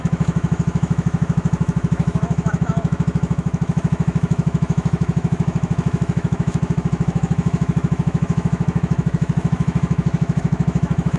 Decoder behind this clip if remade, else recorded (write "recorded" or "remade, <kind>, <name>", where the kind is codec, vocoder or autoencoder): remade, autoencoder, DAC-VAE